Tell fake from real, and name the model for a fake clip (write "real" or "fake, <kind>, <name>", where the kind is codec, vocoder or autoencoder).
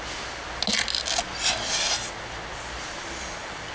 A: real